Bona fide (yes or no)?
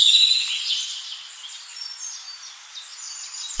yes